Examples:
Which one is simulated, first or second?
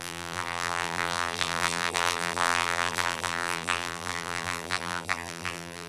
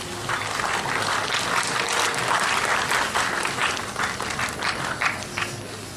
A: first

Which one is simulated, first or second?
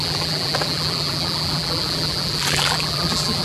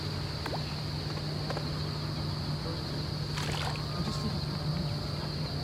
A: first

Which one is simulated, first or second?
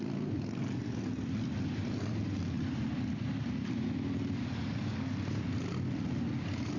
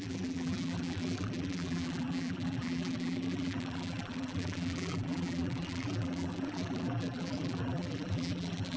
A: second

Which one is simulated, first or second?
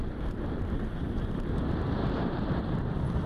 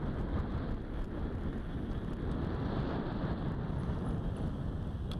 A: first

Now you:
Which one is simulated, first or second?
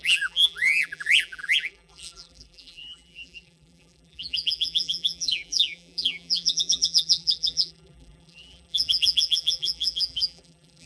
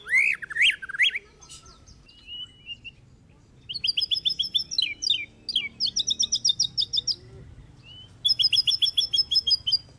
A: first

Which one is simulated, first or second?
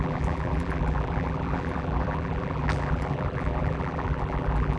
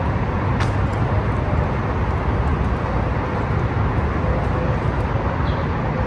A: first